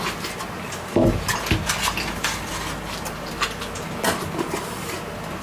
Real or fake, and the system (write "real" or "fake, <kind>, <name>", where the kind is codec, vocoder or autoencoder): real